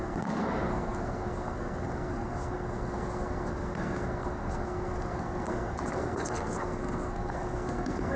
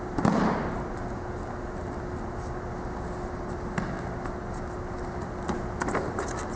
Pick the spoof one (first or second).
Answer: first